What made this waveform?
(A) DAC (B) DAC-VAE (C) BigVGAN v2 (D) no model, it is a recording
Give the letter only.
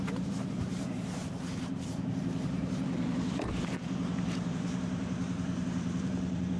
C